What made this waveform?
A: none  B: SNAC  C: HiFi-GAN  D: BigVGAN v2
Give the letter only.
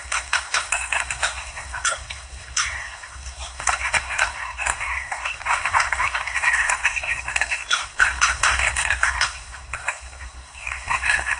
B